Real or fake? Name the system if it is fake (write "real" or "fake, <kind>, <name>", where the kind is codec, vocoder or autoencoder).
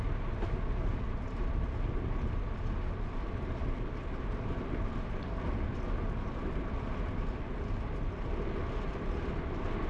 real